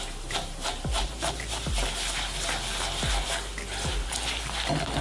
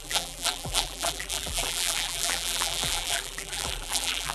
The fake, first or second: second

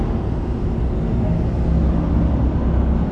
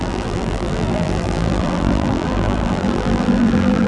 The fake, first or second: second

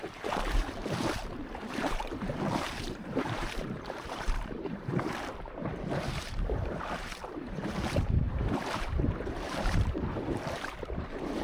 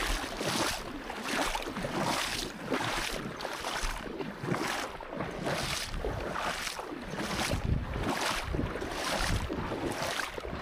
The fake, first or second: first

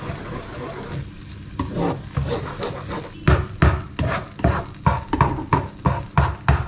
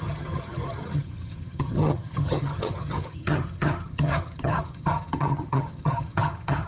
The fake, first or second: second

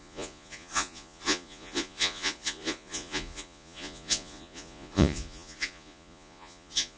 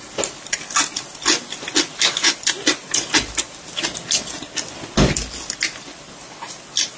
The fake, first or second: first